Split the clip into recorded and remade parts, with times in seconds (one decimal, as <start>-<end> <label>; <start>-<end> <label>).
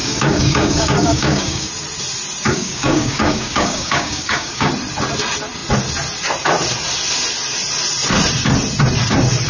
0.0-1.7 remade; 1.7-2.5 recorded; 2.5-4.7 remade; 4.7-9.5 recorded